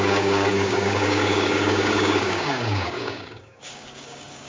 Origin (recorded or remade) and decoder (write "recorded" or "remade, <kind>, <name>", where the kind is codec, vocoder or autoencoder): remade, codec, DAC